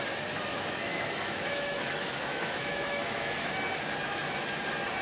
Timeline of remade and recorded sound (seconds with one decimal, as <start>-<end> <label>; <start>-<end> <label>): 0.0-0.5 recorded; 0.5-3.5 remade; 3.5-5.0 recorded